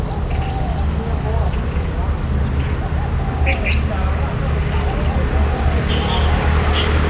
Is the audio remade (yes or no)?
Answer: no